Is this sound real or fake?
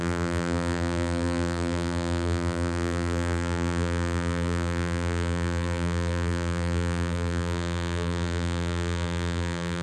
fake